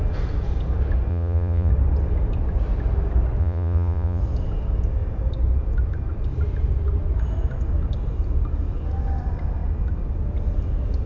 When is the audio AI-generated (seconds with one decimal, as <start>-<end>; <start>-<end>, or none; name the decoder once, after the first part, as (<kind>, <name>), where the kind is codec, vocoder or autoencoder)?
1.1-1.7 (vocoder, Vocos); 3.4-4.2